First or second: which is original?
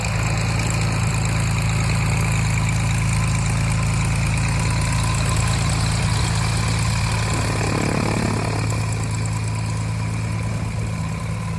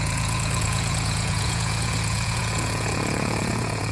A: first